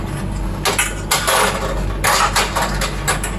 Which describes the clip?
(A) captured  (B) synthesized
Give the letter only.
A